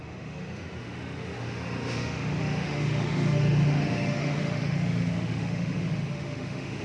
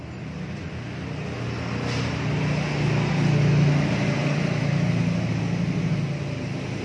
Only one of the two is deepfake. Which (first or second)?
first